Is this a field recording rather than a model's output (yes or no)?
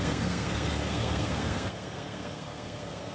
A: no